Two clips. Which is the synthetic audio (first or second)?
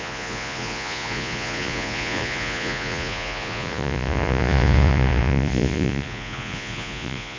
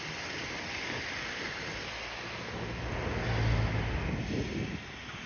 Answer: first